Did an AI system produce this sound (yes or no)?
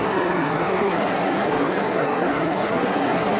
yes